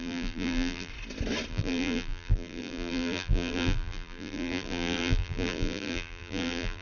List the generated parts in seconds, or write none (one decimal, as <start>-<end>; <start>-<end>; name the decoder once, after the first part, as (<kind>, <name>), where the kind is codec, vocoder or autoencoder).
0.0-0.9 (vocoder, BigVGAN v2); 1.5-6.8